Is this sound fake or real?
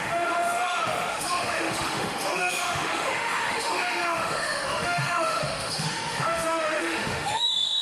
fake